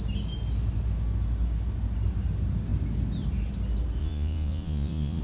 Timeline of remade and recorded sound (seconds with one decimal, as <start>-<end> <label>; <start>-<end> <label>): 0.0-4.0 recorded; 4.0-5.2 remade